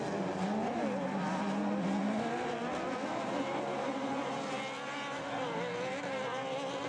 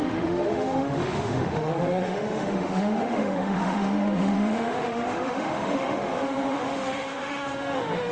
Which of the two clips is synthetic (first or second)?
second